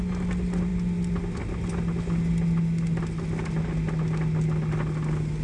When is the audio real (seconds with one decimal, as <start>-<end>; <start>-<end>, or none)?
0.0-5.4